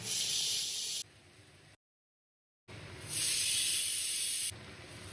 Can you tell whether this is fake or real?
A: real